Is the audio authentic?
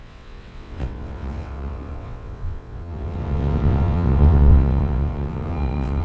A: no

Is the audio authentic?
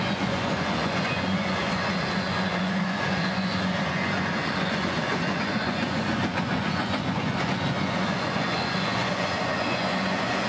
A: no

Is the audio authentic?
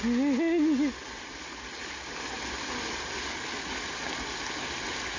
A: yes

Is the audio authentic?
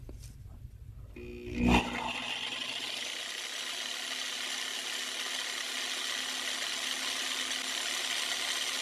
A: yes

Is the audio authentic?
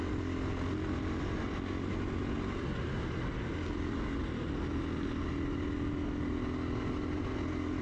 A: yes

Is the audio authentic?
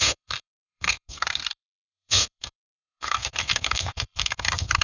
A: no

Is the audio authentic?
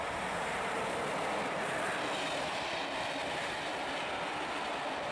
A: yes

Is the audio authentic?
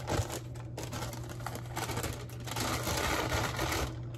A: yes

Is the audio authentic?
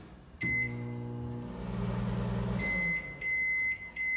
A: yes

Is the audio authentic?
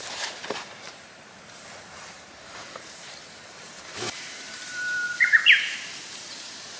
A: no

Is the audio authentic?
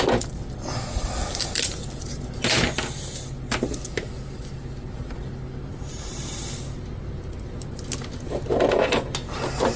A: yes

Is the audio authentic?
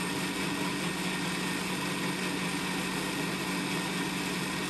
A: yes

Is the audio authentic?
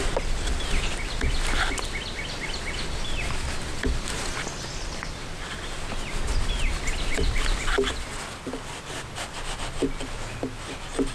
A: yes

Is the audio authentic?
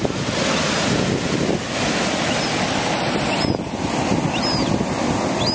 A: yes